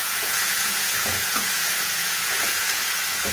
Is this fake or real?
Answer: fake